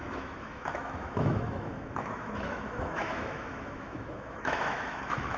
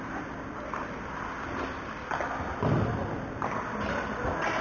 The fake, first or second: first